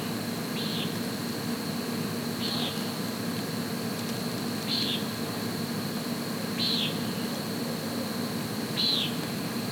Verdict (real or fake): real